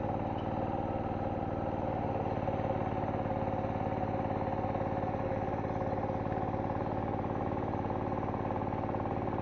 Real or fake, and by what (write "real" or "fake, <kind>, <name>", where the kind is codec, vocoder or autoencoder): real